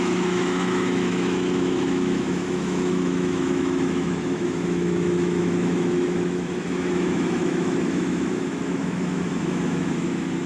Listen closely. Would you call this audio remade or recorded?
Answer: remade